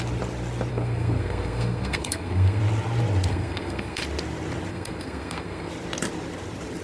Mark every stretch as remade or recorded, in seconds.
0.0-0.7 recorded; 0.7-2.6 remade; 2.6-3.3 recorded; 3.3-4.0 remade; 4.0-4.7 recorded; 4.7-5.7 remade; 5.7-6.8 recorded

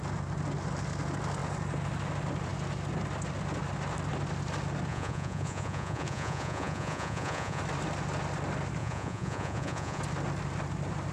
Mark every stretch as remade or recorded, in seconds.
0.0-4.9 recorded; 4.9-7.6 remade; 7.6-8.8 recorded; 8.8-10.0 remade; 10.0-11.1 recorded

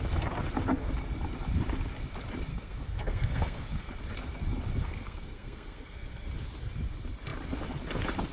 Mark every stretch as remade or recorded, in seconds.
0.0-2.5 recorded; 2.5-3.9 remade; 3.9-4.8 recorded; 4.8-6.3 remade; 6.3-8.3 recorded

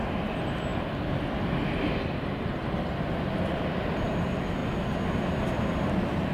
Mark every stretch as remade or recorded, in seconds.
0.0-6.3 recorded